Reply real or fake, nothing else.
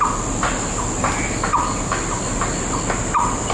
real